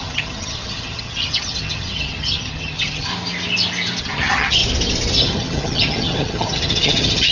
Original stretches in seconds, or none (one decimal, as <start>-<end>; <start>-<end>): 3.1-4.0; 4.6-5.2